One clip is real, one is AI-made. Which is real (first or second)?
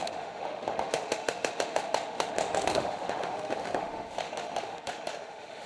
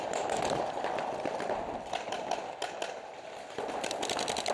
second